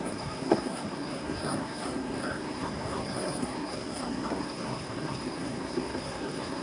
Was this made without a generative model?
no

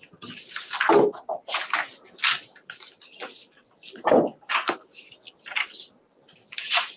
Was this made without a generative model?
yes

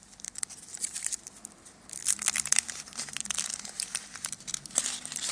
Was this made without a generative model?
no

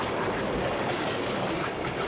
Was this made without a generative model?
no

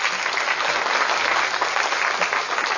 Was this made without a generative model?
yes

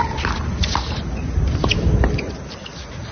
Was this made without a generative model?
yes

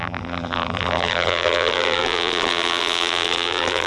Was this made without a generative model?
no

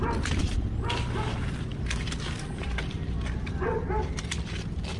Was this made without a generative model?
no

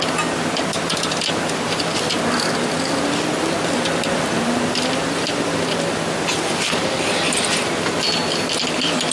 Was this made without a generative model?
yes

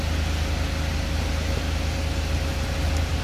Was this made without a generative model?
yes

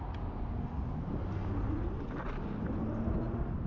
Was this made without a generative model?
yes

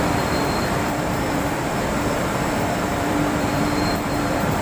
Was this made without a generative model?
no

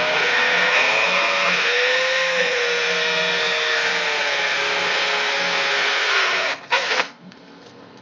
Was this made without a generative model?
no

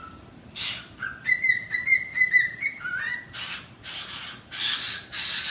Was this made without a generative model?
no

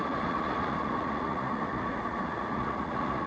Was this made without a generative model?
no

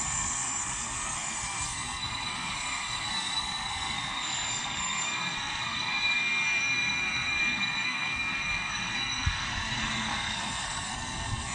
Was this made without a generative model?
no